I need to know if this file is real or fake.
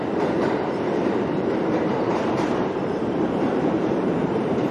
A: fake